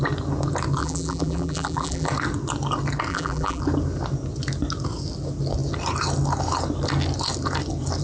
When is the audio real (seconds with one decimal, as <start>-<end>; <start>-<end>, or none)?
0.0-0.8; 2.1-3.1; 3.6-8.0

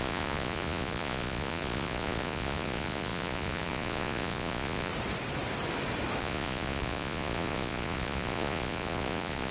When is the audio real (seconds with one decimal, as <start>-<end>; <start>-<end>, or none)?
4.9-6.2